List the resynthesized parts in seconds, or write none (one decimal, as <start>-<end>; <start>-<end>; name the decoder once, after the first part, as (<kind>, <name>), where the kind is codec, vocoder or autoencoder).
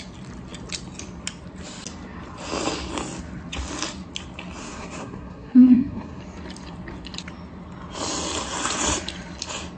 4.6-6.2 (codec, SNAC)